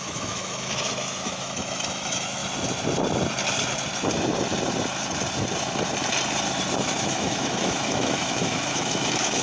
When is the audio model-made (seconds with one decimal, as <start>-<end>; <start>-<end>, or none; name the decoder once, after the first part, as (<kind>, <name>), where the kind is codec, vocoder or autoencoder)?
0.0-2.4 (autoencoder, DAC-VAE); 7.0-9.4